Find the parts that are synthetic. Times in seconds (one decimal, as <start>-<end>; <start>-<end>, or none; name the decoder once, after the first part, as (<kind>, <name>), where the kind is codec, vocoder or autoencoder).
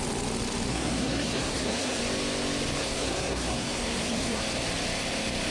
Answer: 0.7-2.0 (codec, SNAC); 2.8-4.4